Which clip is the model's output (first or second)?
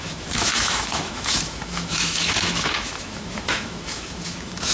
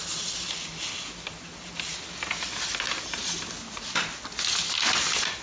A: first